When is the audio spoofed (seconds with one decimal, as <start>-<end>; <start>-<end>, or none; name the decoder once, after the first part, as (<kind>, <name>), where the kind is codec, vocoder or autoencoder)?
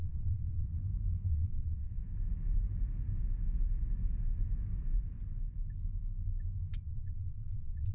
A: 0.0-0.7 (vocoder, WaveNeXt); 1.3-2.0; 6.7-7.9